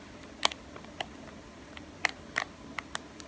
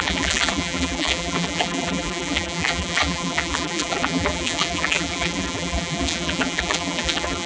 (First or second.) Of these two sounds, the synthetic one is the second